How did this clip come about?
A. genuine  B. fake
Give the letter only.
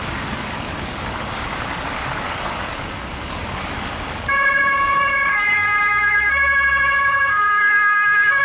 B